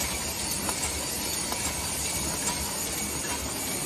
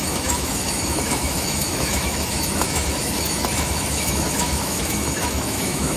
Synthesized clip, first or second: second